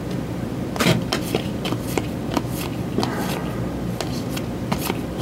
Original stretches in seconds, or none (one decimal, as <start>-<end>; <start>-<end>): 3.4-4.3